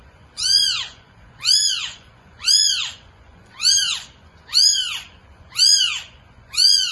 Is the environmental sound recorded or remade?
remade